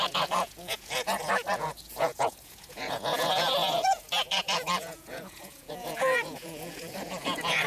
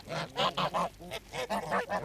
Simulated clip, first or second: first